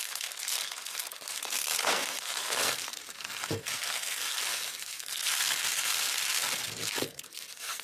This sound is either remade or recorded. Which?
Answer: remade